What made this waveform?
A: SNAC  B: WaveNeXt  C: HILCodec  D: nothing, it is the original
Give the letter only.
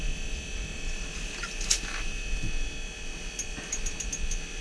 D